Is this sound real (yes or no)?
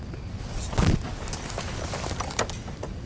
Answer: yes